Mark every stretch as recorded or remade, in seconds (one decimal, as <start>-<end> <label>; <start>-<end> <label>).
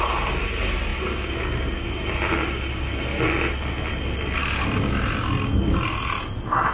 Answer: 0.0-6.7 recorded